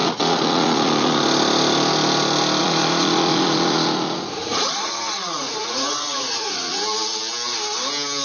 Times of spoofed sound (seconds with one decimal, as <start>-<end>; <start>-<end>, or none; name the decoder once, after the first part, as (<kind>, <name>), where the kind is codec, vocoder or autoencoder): 0.0-1.2 (vocoder, Vocos); 2.6-6.8